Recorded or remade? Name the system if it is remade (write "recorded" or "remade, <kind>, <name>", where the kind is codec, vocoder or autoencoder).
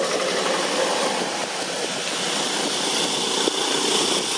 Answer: recorded